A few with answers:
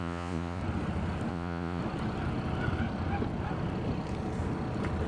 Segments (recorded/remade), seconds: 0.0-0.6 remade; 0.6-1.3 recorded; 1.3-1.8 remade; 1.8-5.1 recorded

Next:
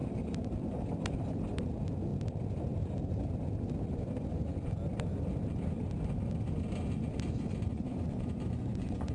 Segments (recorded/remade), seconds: 0.0-7.7 recorded; 7.7-9.1 remade

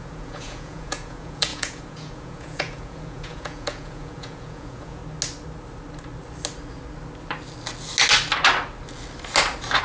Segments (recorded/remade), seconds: 0.0-5.0 remade; 5.0-9.8 recorded

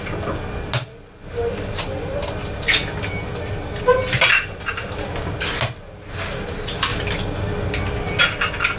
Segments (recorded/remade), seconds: 0.0-8.8 recorded

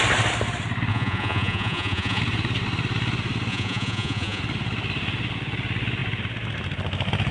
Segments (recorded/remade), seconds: 0.0-0.9 recorded; 0.9-2.2 remade; 2.2-3.5 recorded; 3.5-4.4 remade; 4.4-7.3 recorded

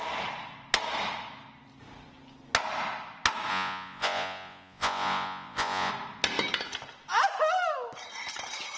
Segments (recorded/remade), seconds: 0.0-3.5 recorded; 3.5-5.9 remade; 5.9-8.8 recorded

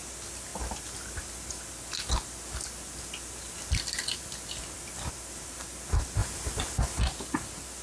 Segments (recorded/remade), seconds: 0.0-7.8 recorded